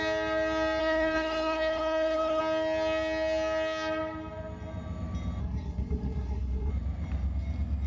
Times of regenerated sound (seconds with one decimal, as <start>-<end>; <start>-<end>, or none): 0.8-2.4; 5.4-6.7